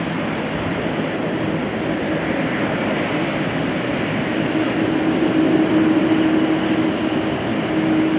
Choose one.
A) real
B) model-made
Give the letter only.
A